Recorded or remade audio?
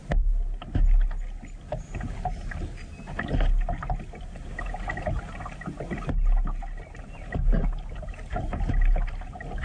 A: recorded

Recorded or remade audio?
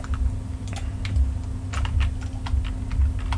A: recorded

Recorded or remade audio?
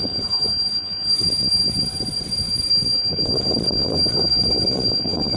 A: remade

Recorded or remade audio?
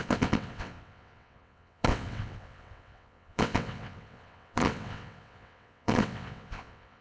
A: remade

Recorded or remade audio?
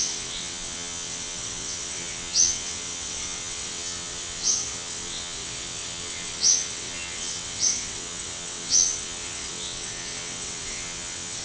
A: remade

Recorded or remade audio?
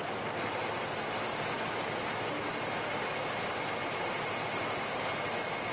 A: recorded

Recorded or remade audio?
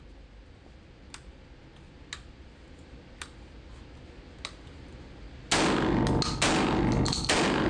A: recorded